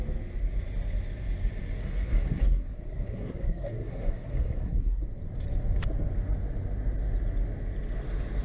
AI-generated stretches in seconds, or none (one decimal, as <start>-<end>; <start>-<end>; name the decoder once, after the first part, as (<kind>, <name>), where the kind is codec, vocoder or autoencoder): 1.8-5.0 (codec, SNAC)